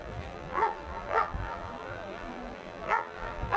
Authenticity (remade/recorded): remade